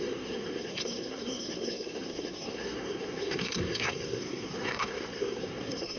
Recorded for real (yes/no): no